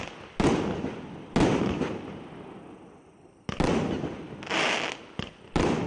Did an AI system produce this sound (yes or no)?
no